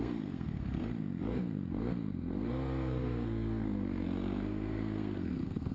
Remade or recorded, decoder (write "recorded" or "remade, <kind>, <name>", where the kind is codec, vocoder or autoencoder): remade, codec, SNAC